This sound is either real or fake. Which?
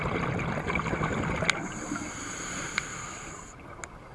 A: real